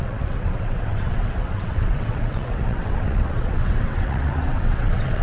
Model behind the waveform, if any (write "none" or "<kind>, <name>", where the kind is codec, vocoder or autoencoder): vocoder, WaveNeXt